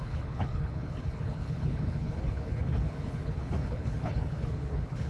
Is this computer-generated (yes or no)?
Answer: yes